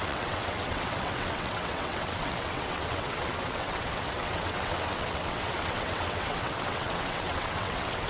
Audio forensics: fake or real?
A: fake